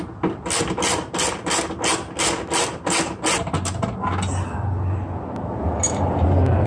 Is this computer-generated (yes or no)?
no